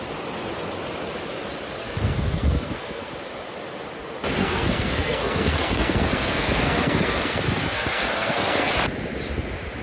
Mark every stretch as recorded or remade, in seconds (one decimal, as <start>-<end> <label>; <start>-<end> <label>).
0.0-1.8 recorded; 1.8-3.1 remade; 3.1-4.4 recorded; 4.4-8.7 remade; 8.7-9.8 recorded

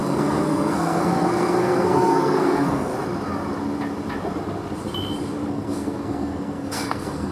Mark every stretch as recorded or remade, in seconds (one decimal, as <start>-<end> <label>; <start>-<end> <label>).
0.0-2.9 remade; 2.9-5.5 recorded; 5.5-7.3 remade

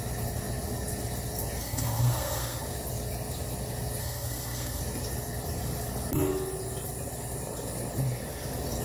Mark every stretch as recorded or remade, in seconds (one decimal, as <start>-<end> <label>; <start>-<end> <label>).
0.0-1.6 recorded; 1.6-2.6 remade; 2.6-4.0 recorded; 4.0-4.8 remade; 4.8-8.8 recorded

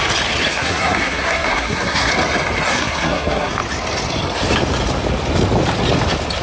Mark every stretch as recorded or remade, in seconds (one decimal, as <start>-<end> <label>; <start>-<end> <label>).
0.0-0.5 recorded; 0.5-2.1 remade; 2.1-2.7 recorded; 2.7-3.5 remade; 3.5-6.4 recorded

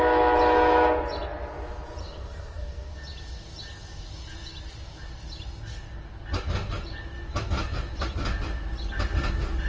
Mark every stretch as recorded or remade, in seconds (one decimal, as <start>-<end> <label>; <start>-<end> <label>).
0.0-2.0 recorded; 2.0-2.9 remade; 2.9-9.7 recorded